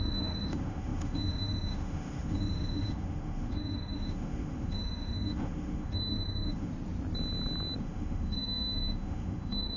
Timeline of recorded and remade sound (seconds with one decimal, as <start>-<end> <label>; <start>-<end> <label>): 0.0-6.7 remade; 6.7-7.8 recorded; 7.8-9.8 remade